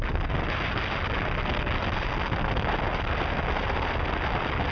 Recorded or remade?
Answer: recorded